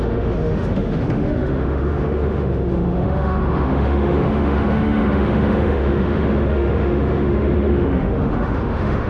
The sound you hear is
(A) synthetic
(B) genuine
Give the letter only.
A